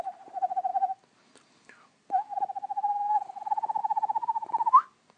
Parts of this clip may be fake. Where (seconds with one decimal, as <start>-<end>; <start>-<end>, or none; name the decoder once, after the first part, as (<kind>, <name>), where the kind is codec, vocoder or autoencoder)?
none